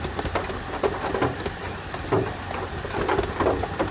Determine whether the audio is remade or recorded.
recorded